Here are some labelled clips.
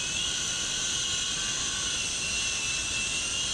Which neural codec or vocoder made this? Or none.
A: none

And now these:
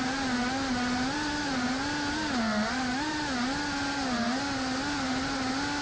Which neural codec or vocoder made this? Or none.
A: none